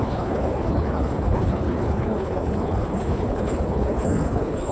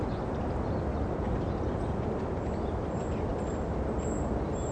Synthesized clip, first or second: first